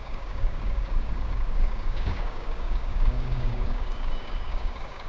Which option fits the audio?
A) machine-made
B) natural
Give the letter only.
A